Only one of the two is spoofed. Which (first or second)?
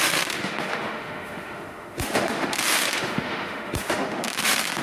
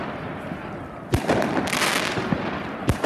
first